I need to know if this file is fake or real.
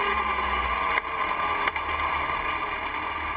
real